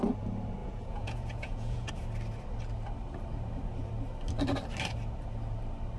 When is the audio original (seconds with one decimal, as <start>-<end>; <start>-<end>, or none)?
0.0-0.6; 1.9-6.0